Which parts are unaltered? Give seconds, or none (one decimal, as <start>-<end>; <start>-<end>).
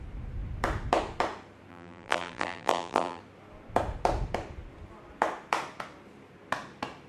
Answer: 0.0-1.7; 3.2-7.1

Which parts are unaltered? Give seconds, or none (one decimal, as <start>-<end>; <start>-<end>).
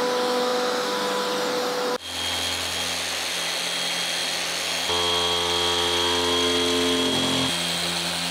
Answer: 0.0-8.3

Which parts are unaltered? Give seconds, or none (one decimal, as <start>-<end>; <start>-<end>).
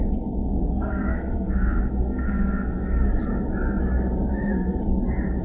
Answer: 0.0-0.5; 3.1-4.3; 4.8-5.4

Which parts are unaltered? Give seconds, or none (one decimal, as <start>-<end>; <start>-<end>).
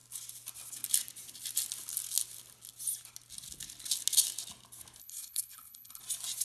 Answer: 0.0-5.0; 6.0-6.4